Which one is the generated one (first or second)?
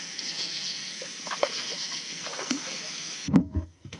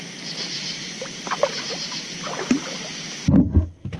first